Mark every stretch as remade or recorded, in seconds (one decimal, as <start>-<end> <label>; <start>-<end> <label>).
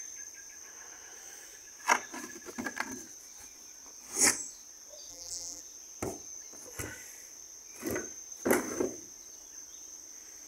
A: 0.0-5.1 recorded; 5.1-5.6 remade; 5.6-10.5 recorded